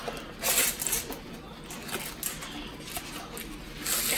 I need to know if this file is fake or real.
real